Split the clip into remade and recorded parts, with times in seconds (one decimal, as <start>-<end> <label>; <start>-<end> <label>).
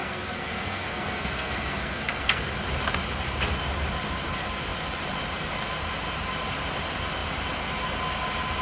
0.0-2.5 remade; 2.5-8.6 recorded